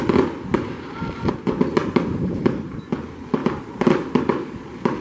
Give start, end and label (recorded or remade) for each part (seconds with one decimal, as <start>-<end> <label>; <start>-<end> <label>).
0.0-0.5 recorded; 0.5-1.2 remade; 1.2-1.8 recorded; 1.8-2.4 remade; 2.4-3.4 recorded; 3.4-4.6 remade; 4.6-5.0 recorded